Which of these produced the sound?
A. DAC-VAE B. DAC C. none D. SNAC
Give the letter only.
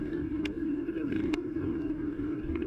B